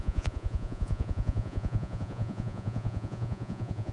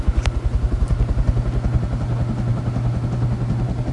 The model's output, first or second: first